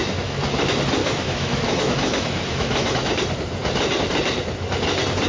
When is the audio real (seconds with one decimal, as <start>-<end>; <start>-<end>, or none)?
0.6-1.0; 3.1-5.3